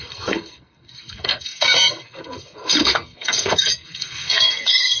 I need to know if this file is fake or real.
fake